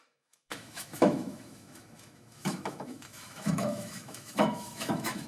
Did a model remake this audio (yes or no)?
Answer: yes